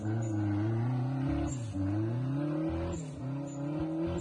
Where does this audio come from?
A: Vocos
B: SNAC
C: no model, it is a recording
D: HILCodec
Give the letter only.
C